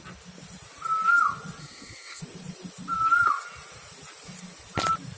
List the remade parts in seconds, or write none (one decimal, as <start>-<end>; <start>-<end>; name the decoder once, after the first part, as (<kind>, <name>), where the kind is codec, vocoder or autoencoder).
1.6-2.2 (codec, SNAC)